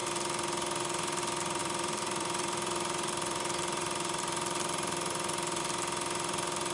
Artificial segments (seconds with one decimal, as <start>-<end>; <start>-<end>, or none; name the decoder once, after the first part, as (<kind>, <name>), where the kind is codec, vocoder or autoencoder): 1.6-5.6 (vocoder, BigVGAN v2)